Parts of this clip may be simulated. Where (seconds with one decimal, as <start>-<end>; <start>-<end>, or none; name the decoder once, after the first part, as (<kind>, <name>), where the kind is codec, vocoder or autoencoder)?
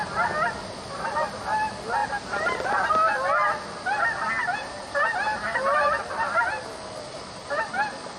2.0-2.9 (vocoder, BigVGAN v2); 4.4-6.0; 7.1-7.7